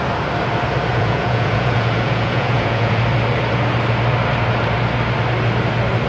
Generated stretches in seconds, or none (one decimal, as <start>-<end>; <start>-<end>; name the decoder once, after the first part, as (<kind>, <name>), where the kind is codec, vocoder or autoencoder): 0.9-3.0 (vocoder, Vocos)